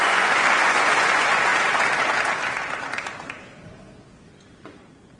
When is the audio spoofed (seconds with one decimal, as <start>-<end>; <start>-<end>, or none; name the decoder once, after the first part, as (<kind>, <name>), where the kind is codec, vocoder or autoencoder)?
0.0-1.5 (vocoder, Vocos); 4.6-5.2

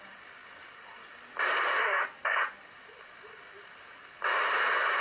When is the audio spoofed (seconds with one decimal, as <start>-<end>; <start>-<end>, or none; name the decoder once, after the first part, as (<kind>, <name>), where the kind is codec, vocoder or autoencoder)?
none

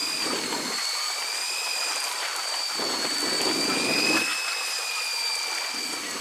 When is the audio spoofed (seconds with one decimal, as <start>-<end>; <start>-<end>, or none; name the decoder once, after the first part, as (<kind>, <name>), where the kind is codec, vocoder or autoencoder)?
0.0-4.3 (vocoder, BigVGAN v2)

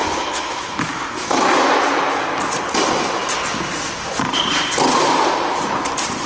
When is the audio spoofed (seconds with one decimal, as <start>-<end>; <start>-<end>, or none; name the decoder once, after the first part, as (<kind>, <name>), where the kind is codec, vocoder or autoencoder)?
0.0-1.7 (autoencoder, DAC-VAE)

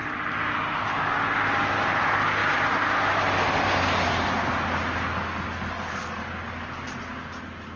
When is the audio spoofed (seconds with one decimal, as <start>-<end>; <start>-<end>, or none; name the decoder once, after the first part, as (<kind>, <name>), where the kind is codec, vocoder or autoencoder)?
none

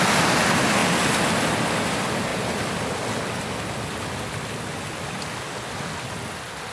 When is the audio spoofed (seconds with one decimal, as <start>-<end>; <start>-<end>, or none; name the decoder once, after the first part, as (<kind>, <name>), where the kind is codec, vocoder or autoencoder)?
none

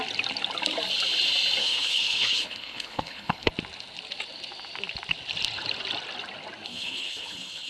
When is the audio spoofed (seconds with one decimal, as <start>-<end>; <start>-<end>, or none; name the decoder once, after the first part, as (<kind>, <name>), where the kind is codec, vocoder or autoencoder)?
1.6-3.5 (codec, HILCodec); 6.7-7.7